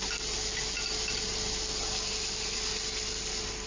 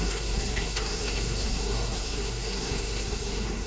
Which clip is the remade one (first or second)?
second